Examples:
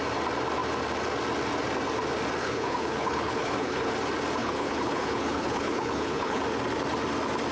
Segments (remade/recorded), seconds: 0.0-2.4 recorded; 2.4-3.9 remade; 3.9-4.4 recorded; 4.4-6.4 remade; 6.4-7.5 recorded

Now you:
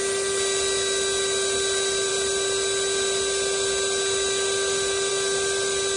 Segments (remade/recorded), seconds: 0.0-6.0 recorded

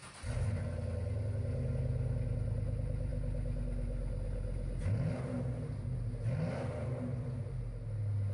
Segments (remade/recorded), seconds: 0.0-8.3 recorded

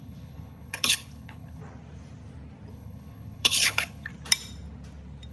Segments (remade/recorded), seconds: 0.0-1.6 remade; 1.6-2.7 recorded; 2.7-4.1 remade; 4.1-5.3 recorded

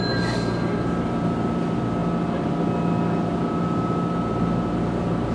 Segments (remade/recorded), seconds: 0.0-5.3 recorded